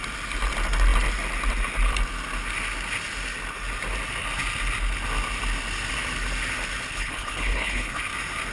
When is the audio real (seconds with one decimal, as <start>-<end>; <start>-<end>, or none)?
0.0-6.9; 8.0-8.5